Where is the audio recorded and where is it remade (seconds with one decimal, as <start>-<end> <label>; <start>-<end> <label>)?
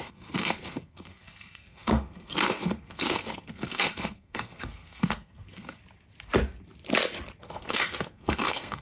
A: 0.0-5.8 remade; 5.8-7.4 recorded; 7.4-8.8 remade